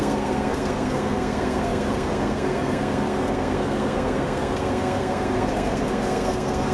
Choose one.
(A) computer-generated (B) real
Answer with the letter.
A